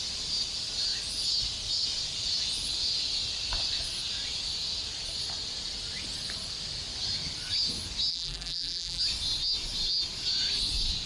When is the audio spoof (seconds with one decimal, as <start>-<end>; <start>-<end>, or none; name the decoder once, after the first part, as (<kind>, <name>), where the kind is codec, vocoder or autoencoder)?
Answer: 8.1-9.0 (vocoder, BigVGAN v2)